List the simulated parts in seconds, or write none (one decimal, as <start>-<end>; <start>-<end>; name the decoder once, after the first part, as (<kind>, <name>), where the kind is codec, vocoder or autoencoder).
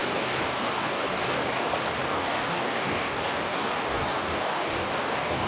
0.0-1.7 (codec, DAC); 2.1-5.5